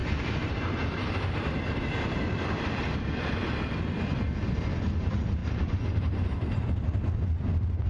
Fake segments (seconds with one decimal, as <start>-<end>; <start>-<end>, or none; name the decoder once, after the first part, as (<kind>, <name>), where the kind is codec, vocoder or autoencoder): 0.0-3.7 (vocoder, BigVGAN v2); 5.4-6.7